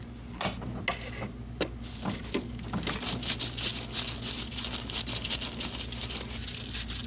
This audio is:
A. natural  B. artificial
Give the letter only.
A